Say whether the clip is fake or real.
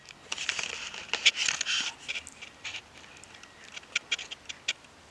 real